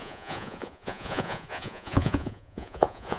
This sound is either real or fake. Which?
fake